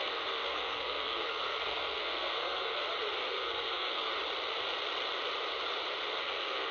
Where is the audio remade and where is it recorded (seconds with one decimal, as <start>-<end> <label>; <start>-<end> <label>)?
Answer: 0.0-2.8 remade; 2.8-3.3 recorded; 3.3-4.1 remade; 4.1-6.2 recorded; 6.2-6.7 remade